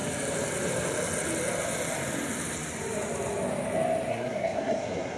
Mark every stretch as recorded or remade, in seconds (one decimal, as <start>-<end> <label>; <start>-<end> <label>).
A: 0.0-4.1 recorded; 4.1-5.2 remade